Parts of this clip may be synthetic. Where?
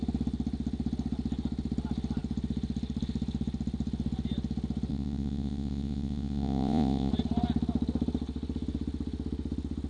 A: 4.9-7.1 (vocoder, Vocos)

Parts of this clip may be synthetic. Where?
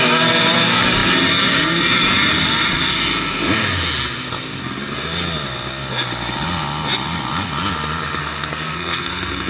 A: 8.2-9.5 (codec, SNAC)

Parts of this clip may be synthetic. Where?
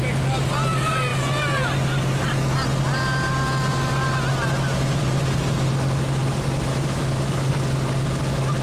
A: 6.7-7.5 (autoencoder, DAC-VAE)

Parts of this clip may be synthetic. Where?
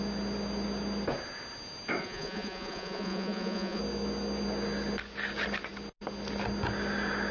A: 2.0-3.8 (vocoder, Vocos)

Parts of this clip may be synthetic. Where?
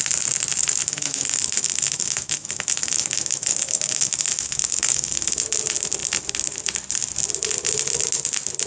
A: 0.8-5.4 (autoencoder, DAC-VAE)